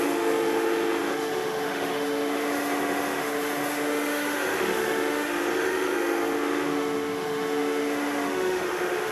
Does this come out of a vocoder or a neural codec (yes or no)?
yes